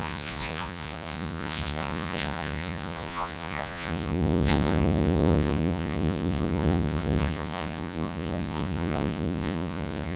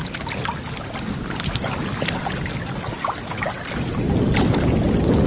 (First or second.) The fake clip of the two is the first